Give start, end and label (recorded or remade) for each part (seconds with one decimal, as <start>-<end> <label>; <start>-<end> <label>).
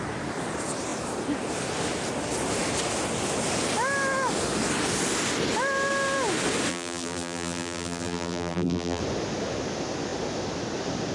0.0-6.7 recorded; 6.7-9.0 remade; 9.0-11.1 recorded